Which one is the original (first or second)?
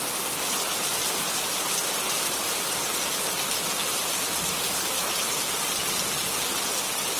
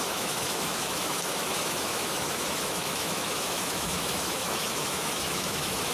first